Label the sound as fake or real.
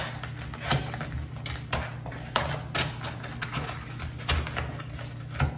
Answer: real